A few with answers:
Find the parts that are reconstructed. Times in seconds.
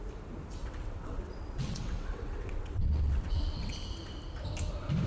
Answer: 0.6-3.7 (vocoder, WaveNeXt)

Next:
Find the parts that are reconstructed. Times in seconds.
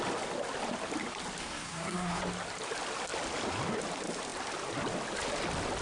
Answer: 1.4-2.2 (codec, SNAC)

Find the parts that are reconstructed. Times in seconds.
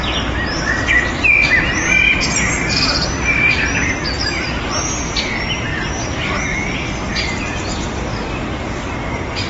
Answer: 5.7-6.4 (vocoder, BigVGAN v2)